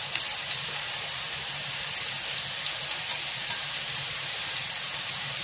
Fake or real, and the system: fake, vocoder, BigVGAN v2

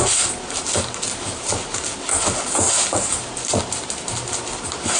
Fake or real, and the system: real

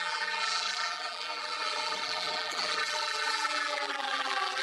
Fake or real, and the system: fake, vocoder, BigVGAN v2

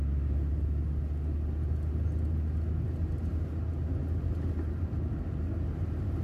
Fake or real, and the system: real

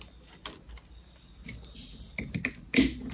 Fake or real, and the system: real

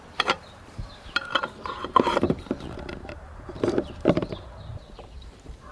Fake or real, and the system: fake, vocoder, BigVGAN v2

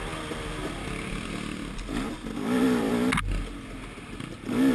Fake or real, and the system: real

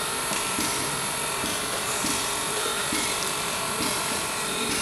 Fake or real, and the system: fake, vocoder, BigVGAN v2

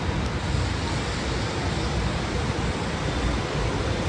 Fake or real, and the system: real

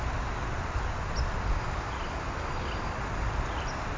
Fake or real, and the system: real